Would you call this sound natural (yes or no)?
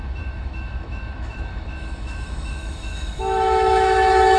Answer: no